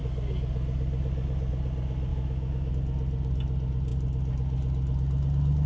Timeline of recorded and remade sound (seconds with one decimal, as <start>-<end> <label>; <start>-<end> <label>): 0.0-2.1 recorded; 2.1-2.7 remade; 2.7-5.7 recorded